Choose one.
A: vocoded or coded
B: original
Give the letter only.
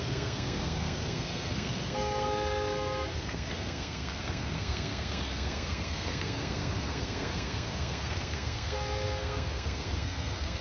A